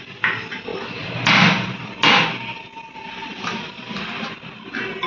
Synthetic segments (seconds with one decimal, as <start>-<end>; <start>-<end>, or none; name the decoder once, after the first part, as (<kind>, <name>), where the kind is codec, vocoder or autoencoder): 3.2-4.6 (vocoder, BigVGAN v2)